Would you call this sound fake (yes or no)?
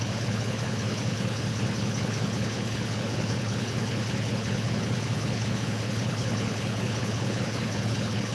yes